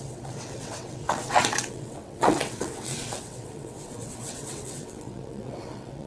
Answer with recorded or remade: remade